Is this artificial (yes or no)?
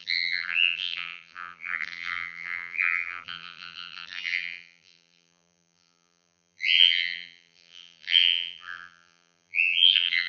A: yes